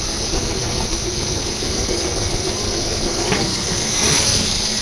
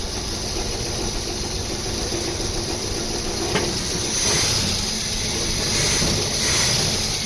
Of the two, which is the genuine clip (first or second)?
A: second